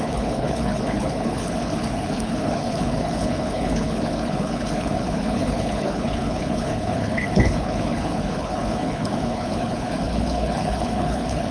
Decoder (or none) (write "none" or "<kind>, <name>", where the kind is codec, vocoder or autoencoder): codec, HILCodec